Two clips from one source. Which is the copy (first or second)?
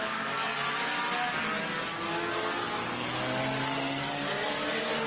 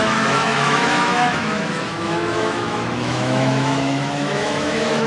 second